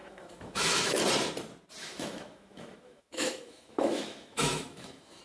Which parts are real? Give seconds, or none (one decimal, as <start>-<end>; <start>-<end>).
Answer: 1.0-1.8